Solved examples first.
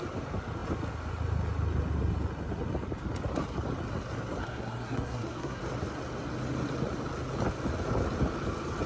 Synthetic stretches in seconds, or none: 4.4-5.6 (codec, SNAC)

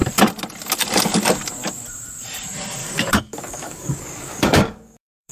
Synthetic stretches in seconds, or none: 2.8-5.3 (codec, DAC)